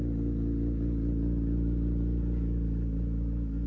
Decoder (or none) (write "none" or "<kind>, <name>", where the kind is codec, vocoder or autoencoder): none